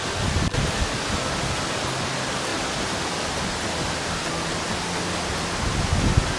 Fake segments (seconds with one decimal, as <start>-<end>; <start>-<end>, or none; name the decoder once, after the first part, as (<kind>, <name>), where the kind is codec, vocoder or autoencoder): none